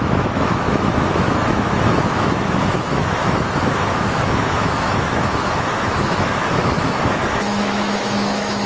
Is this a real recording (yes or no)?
no